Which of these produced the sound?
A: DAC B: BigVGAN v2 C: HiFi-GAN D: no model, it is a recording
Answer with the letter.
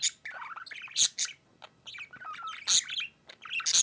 D